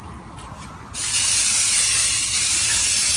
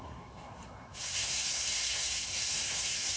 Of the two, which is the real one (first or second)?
first